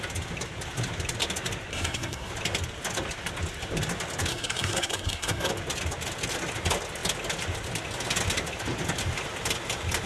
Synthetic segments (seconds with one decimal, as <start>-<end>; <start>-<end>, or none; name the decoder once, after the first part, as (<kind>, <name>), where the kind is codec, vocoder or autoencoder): 1.7-2.3 (codec, SNAC); 4.3-5.5